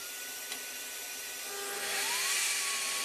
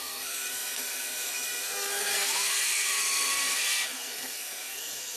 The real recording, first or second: first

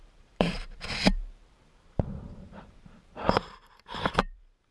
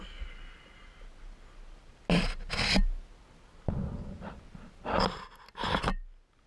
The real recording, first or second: second